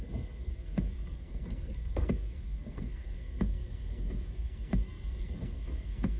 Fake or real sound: fake